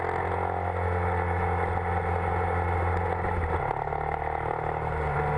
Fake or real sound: real